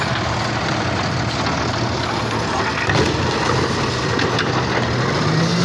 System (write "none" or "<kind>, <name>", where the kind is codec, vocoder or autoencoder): none